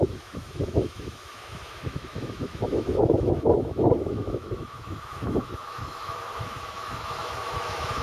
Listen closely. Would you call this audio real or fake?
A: fake